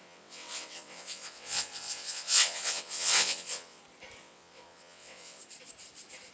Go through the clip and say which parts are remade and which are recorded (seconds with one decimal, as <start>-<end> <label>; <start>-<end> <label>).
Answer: 0.0-3.8 remade; 3.8-4.2 recorded; 4.2-5.4 remade; 5.4-6.3 recorded